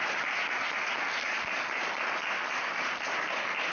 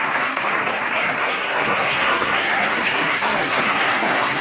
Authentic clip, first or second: first